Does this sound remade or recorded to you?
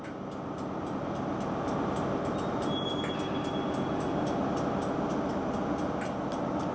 recorded